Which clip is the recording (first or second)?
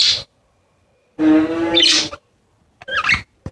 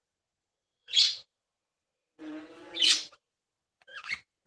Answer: first